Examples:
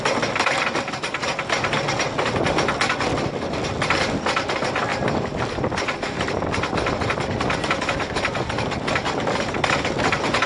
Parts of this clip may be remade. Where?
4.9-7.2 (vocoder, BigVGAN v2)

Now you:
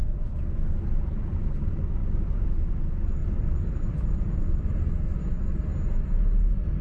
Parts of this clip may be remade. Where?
2.0-2.7 (vocoder, BigVGAN v2); 3.2-4.9

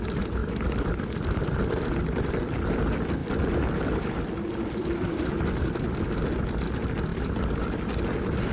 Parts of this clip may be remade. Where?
0.4-2.3 (vocoder, BigVGAN v2); 3.2-5.9; 7.1-8.5

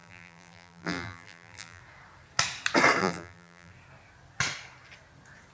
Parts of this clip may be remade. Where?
0.0-1.8 (vocoder, BigVGAN v2); 3.0-3.7

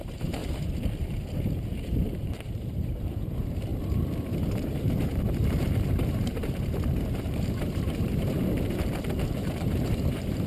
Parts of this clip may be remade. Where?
0.0-0.4 (vocoder, BigVGAN v2); 1.0-3.7; 4.6-10.5

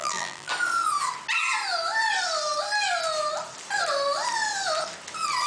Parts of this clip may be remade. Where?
0.0-0.5 (vocoder, BigVGAN v2)